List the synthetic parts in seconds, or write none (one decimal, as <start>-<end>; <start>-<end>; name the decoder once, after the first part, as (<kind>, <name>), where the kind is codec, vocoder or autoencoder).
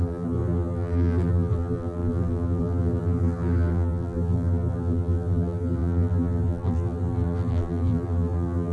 0.0-8.7 (vocoder, BigVGAN v2)